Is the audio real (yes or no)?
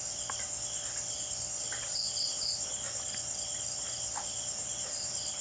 no